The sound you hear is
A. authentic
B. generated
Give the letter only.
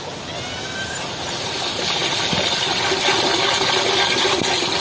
A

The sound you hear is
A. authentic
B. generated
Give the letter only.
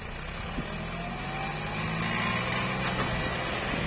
A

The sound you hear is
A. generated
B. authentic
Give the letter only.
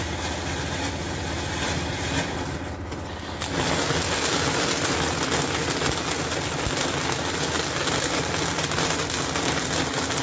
B